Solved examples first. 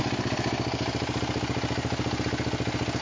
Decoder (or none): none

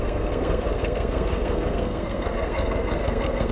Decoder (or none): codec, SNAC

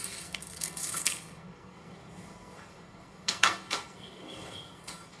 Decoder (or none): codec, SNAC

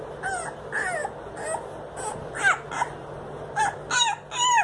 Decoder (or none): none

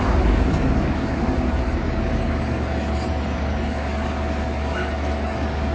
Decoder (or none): codec, DAC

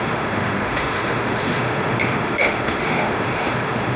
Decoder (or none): autoencoder, DAC-VAE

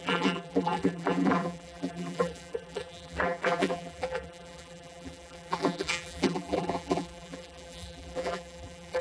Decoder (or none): vocoder, BigVGAN v2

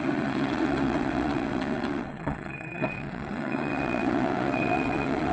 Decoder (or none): vocoder, WaveNeXt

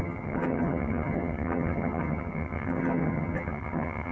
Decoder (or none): vocoder, HiFi-GAN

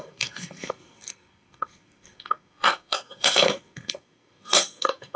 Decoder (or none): codec, SNAC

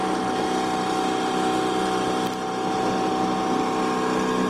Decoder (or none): none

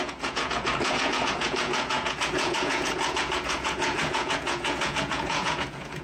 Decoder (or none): vocoder, Vocos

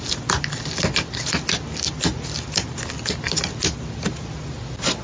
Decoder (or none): none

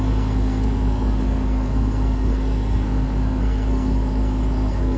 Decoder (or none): codec, SNAC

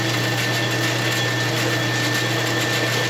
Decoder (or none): none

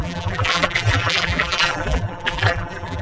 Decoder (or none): vocoder, BigVGAN v2